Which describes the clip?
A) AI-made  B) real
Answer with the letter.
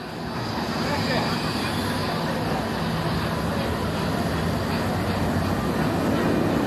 B